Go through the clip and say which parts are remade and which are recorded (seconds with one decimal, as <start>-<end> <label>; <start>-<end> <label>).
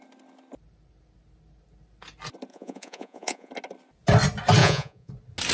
0.0-2.5 recorded; 2.5-3.5 remade; 3.5-4.6 recorded; 4.6-5.1 remade; 5.1-5.5 recorded